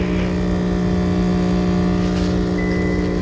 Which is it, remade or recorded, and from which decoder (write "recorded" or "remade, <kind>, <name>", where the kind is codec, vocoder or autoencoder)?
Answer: recorded